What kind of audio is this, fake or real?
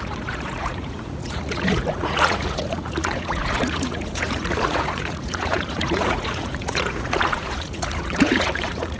fake